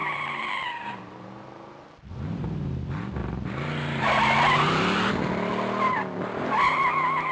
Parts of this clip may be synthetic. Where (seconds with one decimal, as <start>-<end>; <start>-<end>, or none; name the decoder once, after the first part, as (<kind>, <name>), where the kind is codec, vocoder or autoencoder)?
0.0-2.1 (vocoder, BigVGAN v2); 3.2-5.1